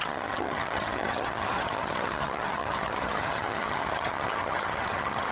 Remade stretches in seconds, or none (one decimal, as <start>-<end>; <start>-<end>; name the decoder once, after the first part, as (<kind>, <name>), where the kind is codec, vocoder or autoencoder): 0.0-5.3 (vocoder, HiFi-GAN)